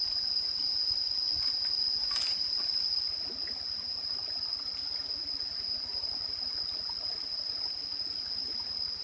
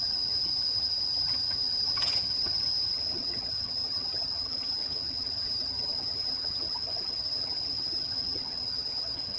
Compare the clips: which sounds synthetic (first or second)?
second